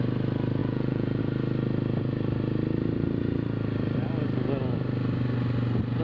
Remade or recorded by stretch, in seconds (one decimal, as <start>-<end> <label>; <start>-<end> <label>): 0.0-0.6 recorded; 0.6-1.2 remade; 1.2-6.0 recorded